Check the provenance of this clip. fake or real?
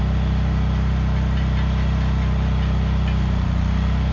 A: real